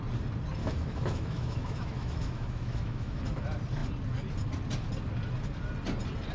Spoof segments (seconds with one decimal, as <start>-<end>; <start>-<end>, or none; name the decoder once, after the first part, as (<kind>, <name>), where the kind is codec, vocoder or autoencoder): 0.6-3.2 (autoencoder, DAC-VAE)